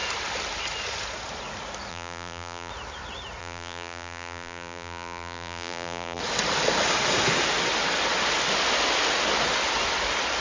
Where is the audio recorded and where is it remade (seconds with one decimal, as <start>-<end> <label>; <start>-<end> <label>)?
0.0-1.9 recorded; 1.9-2.7 remade; 2.7-3.4 recorded; 3.4-6.2 remade; 6.2-10.4 recorded